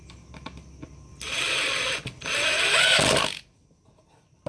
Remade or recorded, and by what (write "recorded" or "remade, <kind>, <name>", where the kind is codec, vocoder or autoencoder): recorded